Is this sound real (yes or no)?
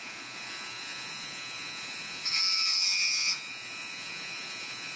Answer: no